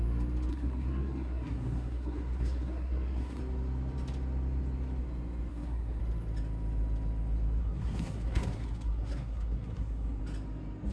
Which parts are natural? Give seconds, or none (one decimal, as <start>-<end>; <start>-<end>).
0.0-0.5; 3.4-5.5; 6.0-7.6; 10.2-10.9